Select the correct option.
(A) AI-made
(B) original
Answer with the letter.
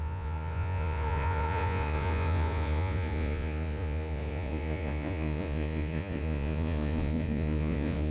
A